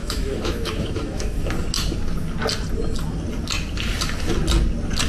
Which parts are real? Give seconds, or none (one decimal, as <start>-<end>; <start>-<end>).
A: 1.5-5.1